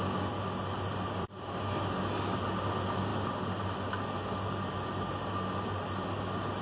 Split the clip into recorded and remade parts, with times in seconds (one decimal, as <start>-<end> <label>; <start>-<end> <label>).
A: 0.0-6.6 recorded